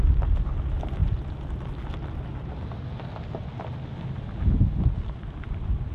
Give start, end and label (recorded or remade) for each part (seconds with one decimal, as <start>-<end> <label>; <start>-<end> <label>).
0.0-5.9 recorded